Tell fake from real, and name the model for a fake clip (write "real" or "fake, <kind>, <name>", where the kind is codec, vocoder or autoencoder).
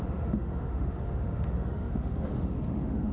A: fake, autoencoder, DAC-VAE